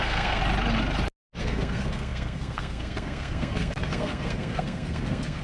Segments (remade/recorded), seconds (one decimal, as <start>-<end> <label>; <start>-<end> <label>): 0.0-0.4 remade; 0.4-1.4 recorded; 1.4-5.4 remade

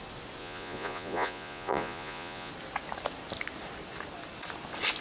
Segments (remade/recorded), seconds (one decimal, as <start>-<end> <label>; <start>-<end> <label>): 0.0-0.4 recorded; 0.4-2.5 remade; 2.5-5.0 recorded

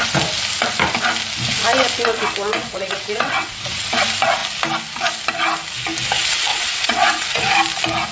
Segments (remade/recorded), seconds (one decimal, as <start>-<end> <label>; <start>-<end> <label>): 0.0-2.5 recorded; 2.5-3.9 remade; 3.9-6.5 recorded; 6.5-7.4 remade; 7.4-8.1 recorded

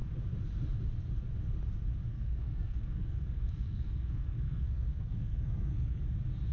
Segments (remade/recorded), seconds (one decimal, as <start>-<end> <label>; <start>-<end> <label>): 0.0-2.1 recorded; 2.1-6.0 remade; 6.0-6.5 recorded